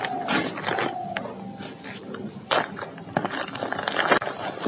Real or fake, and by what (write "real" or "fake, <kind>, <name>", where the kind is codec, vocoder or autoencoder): real